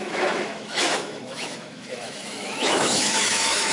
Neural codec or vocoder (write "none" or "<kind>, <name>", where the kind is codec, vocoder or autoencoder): autoencoder, DAC-VAE